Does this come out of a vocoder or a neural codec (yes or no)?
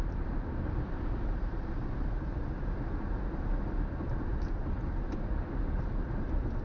yes